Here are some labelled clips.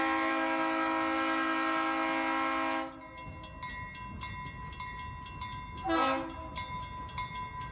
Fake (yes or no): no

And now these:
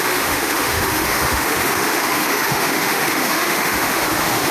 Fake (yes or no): yes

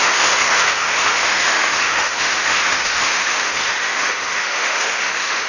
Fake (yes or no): yes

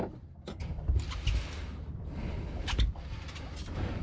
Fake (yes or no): no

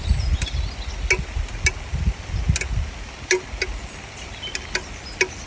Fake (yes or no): no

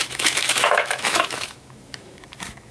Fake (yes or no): yes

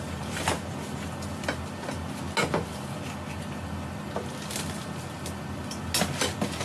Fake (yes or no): no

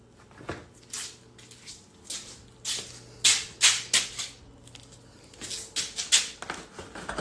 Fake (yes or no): no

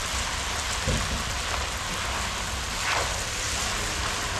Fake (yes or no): no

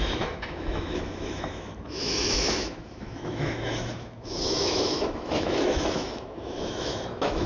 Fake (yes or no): yes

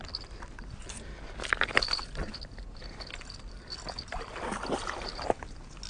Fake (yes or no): no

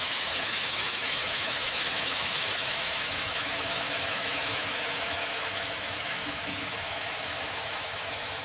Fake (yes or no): yes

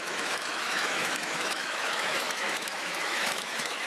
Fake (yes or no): yes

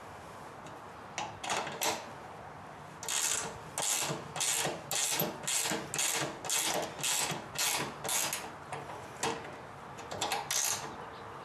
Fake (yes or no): no